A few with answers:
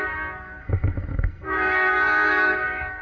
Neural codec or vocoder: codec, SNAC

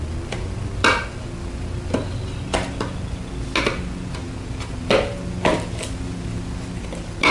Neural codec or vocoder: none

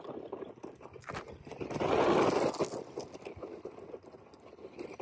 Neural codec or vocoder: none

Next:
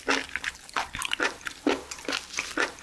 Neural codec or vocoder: none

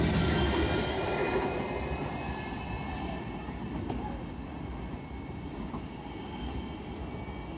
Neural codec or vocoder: none